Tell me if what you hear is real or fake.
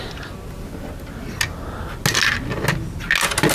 real